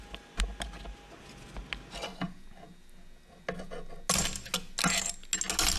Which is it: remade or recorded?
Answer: recorded